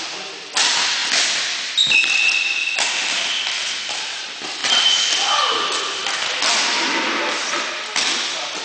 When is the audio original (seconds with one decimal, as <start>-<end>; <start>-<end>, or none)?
0.0-8.6